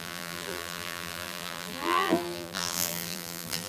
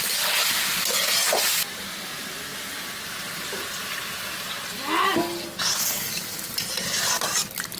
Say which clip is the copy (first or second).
first